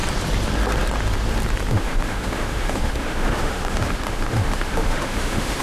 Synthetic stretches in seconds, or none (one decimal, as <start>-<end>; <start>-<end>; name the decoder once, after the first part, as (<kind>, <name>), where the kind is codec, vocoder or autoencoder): 1.7-5.6 (autoencoder, DAC-VAE)